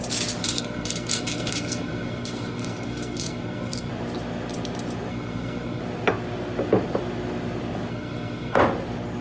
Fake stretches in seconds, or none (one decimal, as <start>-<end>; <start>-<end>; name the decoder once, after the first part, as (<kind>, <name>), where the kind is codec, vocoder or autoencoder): 0.4-3.9 (codec, SNAC); 5.1-5.8; 7.9-8.6